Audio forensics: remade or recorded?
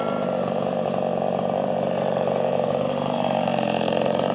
remade